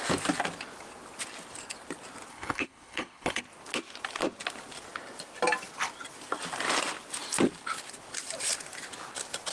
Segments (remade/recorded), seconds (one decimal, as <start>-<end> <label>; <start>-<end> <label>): 0.0-2.3 recorded; 2.3-3.4 remade; 3.4-9.5 recorded